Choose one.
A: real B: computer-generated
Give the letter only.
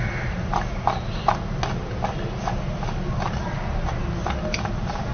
A